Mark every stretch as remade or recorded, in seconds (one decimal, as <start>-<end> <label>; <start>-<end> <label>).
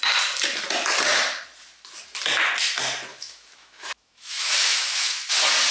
0.0-3.1 recorded; 3.1-5.3 remade; 5.3-5.7 recorded